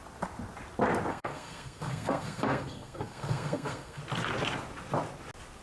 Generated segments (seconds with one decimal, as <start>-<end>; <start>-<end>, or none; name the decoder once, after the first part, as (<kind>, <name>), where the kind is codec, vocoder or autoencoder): 1.1-4.0 (codec, SNAC)